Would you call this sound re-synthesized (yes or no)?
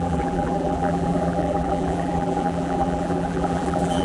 yes